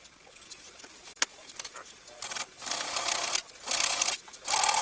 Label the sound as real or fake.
real